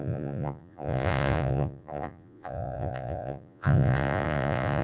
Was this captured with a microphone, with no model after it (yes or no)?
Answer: no